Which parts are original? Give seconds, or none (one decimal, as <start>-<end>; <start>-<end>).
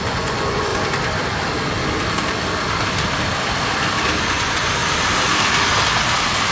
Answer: 0.7-4.2; 4.8-6.5